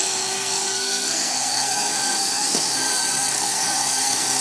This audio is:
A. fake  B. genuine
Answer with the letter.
A